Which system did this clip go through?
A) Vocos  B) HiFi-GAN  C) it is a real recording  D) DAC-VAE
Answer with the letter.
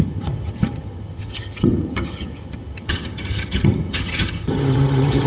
B